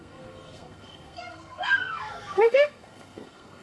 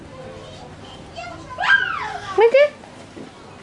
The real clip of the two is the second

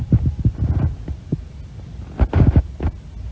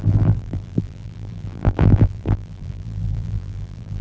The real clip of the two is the first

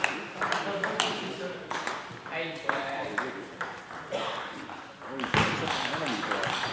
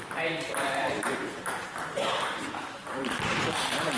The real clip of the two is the first